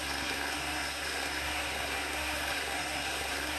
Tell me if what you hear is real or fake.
fake